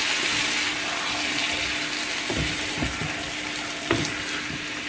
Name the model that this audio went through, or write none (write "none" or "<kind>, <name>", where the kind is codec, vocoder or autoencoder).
none